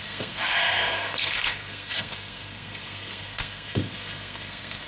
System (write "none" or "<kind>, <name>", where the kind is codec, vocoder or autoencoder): codec, SNAC